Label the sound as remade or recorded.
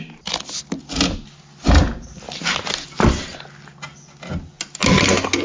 recorded